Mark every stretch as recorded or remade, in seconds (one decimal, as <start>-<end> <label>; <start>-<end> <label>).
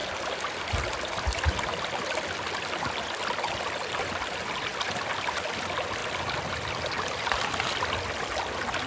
0.0-8.9 recorded